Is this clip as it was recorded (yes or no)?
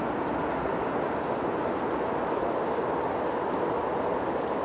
yes